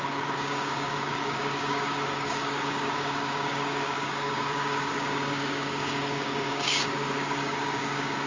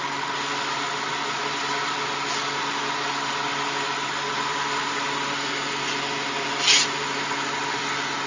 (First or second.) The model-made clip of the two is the first